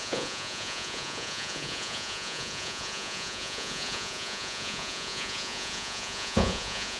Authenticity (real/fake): fake